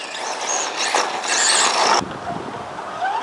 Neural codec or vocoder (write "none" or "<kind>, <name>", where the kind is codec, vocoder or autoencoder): none